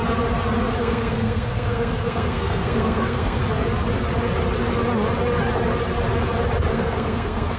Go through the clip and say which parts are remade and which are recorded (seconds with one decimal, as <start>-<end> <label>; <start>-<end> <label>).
0.0-0.8 recorded; 0.8-3.4 remade; 3.4-6.7 recorded; 6.7-7.6 remade